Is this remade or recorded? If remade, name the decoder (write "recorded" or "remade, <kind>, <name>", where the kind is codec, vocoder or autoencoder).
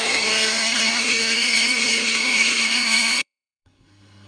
remade, codec, SNAC